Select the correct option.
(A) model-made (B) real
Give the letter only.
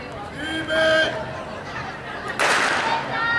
B